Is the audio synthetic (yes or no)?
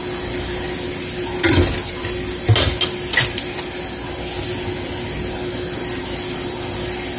no